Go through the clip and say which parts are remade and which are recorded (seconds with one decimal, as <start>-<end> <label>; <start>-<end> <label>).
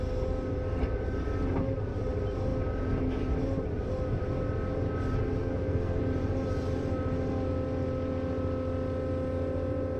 0.0-5.4 recorded; 5.4-6.0 remade; 6.0-10.0 recorded